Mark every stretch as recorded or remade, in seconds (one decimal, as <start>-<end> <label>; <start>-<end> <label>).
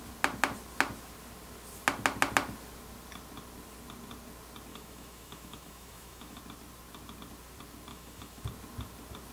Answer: 0.0-4.7 recorded; 4.7-6.4 remade; 6.4-7.9 recorded; 7.9-8.4 remade; 8.4-9.3 recorded